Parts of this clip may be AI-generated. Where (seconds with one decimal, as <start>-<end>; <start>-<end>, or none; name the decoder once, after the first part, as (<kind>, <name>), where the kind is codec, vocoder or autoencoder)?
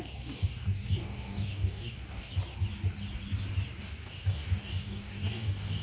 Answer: 0.0-2.3 (codec, DAC); 3.8-5.8